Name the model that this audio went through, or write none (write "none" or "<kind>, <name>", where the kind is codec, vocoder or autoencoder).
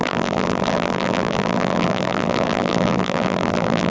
vocoder, BigVGAN v2